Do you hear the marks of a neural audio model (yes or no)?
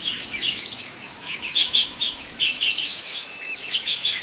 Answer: yes